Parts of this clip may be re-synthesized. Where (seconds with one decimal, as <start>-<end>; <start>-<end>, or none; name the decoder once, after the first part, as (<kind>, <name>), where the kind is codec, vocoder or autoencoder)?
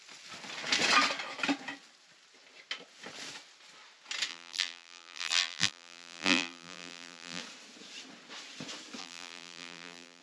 4.3-7.4 (vocoder, BigVGAN v2); 9.0-10.2